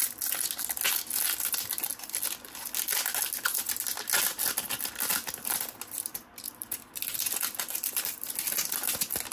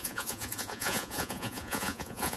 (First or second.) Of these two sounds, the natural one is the first